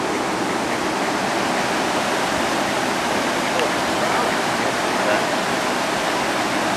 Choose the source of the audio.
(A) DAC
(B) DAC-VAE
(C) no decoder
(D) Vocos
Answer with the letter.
C